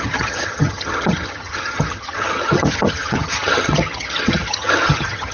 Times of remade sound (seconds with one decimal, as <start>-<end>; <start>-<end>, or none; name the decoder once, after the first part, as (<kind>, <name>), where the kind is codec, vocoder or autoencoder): 0.0-5.3 (vocoder, HiFi-GAN)